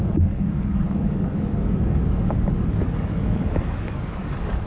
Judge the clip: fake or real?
fake